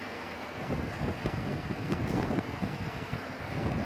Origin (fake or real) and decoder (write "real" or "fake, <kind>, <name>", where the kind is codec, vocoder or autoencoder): fake, codec, SNAC